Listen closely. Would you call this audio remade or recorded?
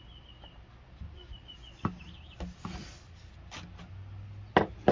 recorded